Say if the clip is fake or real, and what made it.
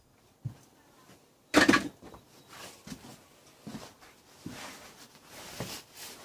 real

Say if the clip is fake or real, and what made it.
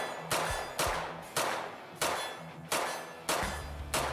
real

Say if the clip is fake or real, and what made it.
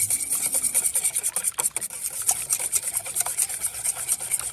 real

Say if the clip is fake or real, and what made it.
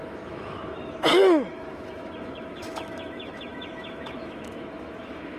fake, autoencoder, DAC-VAE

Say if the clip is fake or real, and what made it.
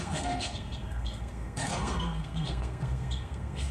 fake, codec, SNAC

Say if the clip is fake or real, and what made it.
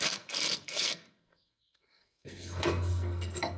fake, codec, SNAC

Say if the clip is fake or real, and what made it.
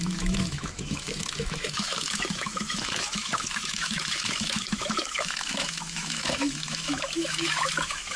fake, autoencoder, DAC-VAE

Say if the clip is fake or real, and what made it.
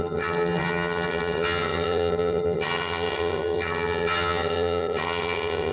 fake, vocoder, HiFi-GAN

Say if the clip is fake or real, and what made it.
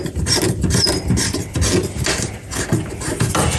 real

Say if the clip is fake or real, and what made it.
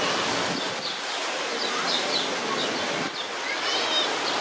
real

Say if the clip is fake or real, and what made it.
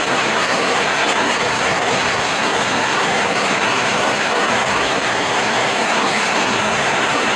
fake, codec, SNAC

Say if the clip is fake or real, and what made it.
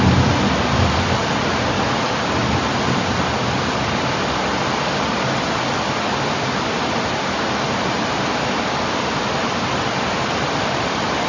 real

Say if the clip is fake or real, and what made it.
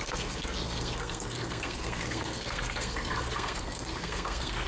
fake, codec, SNAC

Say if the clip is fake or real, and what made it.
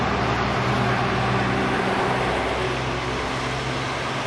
real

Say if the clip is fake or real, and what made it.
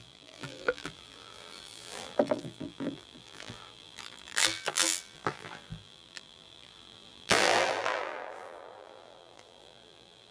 fake, vocoder, BigVGAN v2